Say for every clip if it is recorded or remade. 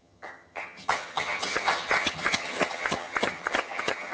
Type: remade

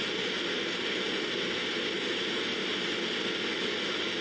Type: recorded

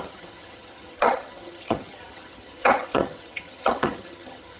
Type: remade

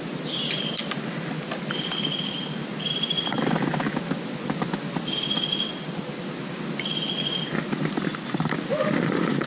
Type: recorded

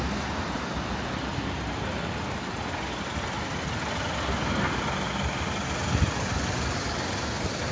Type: recorded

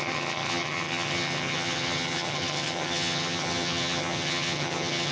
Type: remade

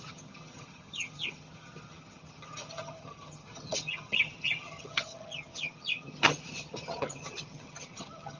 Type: remade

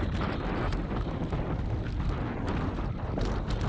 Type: recorded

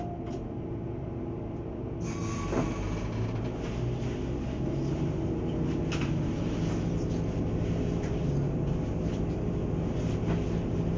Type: recorded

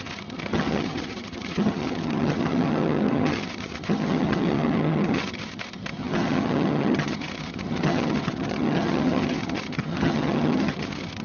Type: remade